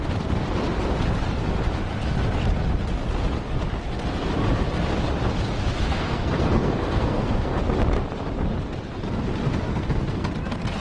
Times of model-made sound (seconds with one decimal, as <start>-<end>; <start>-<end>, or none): 5.9-7.6; 9.7-10.3